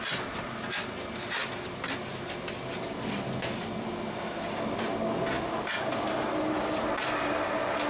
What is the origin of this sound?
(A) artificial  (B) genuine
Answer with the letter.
B